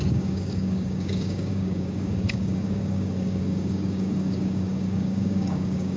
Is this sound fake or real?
fake